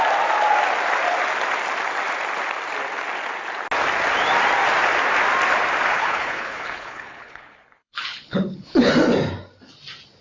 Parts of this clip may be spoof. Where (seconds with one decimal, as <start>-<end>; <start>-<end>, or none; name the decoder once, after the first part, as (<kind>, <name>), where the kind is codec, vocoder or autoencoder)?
5.9-8.9 (codec, HILCodec)